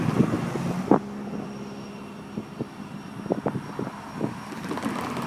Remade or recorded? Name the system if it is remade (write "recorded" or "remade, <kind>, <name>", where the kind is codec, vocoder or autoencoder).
recorded